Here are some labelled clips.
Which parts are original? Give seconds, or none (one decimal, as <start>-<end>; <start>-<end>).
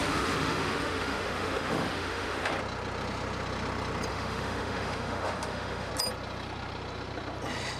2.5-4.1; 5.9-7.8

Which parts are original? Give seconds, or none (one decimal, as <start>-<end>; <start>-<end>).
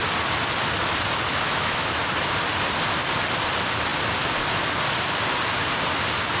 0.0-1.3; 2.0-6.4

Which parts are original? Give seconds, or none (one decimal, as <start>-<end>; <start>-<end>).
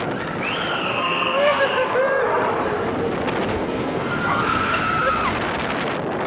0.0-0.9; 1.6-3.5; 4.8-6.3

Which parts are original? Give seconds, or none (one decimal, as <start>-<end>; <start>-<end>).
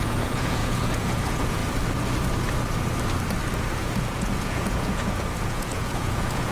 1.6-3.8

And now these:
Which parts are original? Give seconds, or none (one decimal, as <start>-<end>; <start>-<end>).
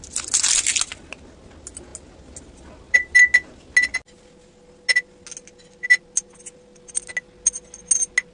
0.0-8.3